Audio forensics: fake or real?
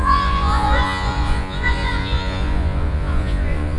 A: fake